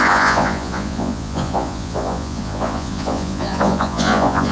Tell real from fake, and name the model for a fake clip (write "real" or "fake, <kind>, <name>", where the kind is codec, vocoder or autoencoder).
fake, vocoder, Vocos